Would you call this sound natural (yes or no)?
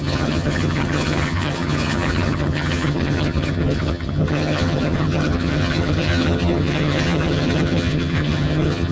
no